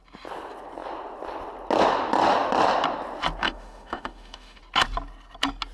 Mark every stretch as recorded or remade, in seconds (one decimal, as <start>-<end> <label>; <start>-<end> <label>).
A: 0.0-3.4 recorded; 3.4-4.6 remade; 4.6-5.7 recorded